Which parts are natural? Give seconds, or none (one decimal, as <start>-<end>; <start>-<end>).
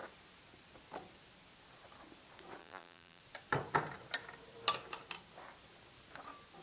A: 0.0-2.6; 3.2-6.6